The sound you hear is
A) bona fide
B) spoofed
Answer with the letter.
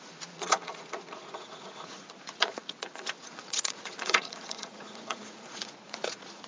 B